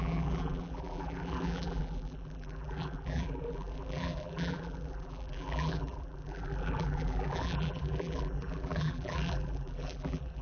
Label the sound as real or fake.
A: fake